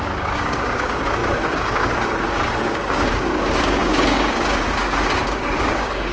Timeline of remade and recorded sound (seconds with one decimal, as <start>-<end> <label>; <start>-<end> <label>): 0.0-6.1 remade